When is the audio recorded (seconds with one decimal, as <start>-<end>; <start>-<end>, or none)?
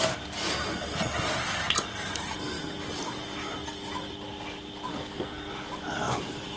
0.0-4.9; 5.5-6.6